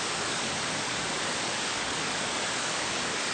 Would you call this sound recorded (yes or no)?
no